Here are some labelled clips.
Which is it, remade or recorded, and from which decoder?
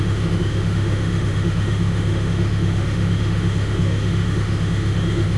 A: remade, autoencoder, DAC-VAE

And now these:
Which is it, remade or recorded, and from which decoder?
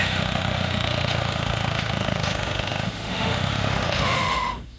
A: remade, autoencoder, DAC-VAE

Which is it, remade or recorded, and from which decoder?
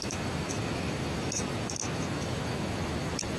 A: remade, autoencoder, DAC-VAE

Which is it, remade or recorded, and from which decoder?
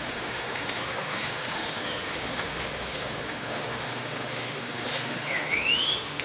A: remade, autoencoder, DAC-VAE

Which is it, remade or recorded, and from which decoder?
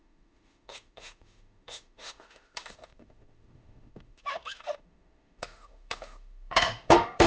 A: remade, autoencoder, DAC-VAE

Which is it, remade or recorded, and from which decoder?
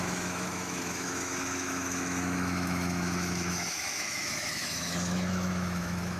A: remade, autoencoder, DAC-VAE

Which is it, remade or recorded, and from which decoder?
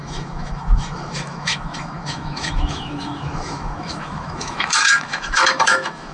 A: remade, autoencoder, DAC-VAE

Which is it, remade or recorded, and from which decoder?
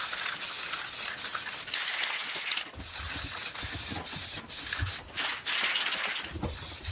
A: recorded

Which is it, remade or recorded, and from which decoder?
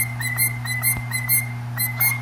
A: recorded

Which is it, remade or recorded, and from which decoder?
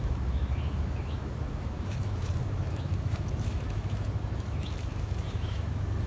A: remade, autoencoder, DAC-VAE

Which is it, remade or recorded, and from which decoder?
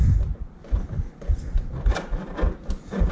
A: recorded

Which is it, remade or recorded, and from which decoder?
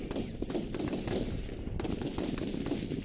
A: recorded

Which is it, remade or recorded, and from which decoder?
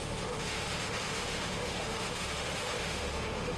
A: remade, autoencoder, DAC-VAE